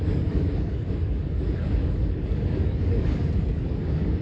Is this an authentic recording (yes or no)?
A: no